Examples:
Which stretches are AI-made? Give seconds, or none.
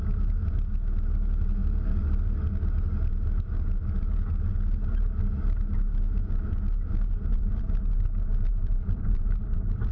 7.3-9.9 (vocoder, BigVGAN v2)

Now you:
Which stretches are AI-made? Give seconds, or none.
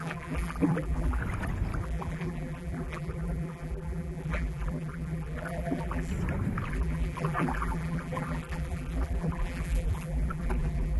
0.0-1.2 (vocoder, BigVGAN v2); 1.8-6.1; 6.7-11.0